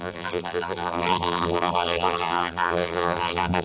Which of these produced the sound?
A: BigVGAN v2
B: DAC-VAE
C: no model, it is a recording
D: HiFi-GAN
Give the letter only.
A